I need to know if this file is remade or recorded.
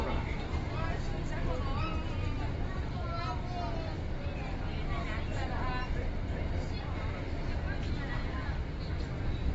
recorded